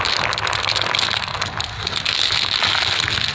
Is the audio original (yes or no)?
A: yes